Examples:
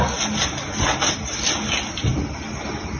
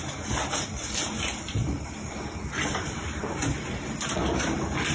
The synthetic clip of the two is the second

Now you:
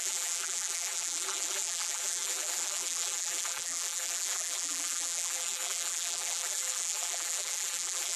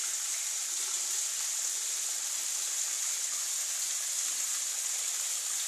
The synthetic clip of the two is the first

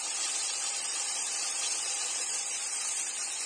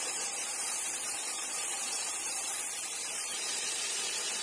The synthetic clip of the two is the second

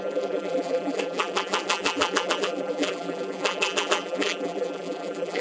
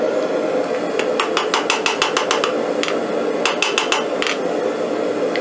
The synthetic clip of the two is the first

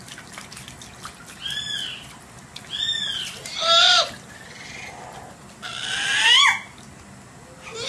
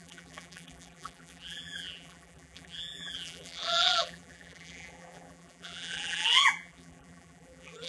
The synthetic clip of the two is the second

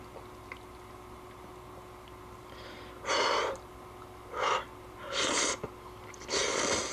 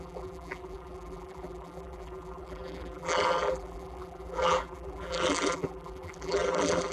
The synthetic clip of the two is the second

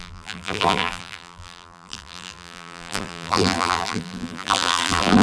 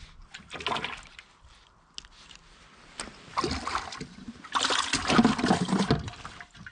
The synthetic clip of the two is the first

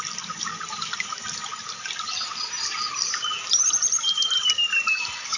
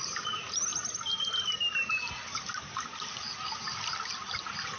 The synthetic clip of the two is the first